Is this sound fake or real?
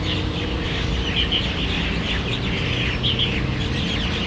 real